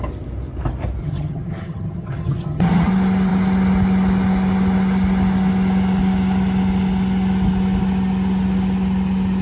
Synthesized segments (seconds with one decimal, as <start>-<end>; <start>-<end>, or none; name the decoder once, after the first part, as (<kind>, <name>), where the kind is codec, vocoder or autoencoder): 1.0-2.9 (vocoder, HiFi-GAN)